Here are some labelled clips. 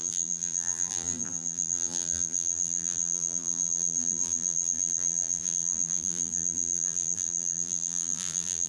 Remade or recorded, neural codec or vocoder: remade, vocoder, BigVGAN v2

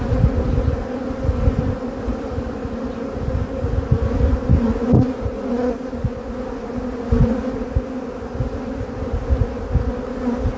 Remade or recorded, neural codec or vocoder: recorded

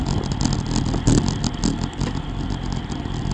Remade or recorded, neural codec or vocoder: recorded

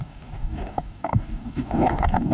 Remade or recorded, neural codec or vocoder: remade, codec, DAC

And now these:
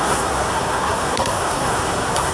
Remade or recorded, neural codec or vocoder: remade, codec, SNAC